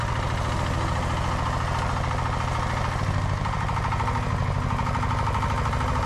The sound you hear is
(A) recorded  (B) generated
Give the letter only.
A